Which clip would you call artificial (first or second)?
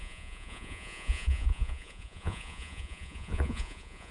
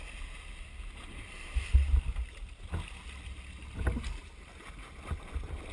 first